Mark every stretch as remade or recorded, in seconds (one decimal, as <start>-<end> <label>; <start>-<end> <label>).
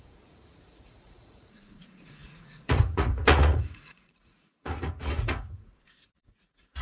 0.0-6.8 remade